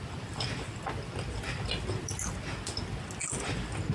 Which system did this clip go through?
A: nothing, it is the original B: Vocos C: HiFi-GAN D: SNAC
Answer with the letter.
A